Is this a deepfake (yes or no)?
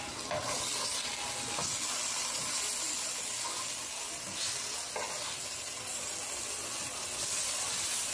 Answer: no